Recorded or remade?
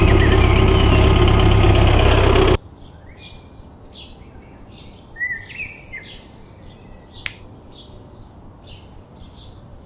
recorded